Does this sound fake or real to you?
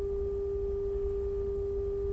real